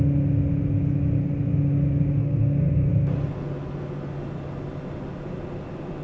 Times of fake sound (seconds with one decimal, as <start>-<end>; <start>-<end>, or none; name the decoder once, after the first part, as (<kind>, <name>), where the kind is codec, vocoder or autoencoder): 2.2-2.9 (codec, SNAC)